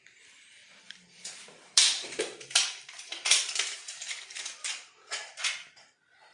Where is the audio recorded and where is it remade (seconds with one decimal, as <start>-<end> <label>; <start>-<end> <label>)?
0.0-0.6 recorded; 0.6-4.1 remade; 4.1-6.3 recorded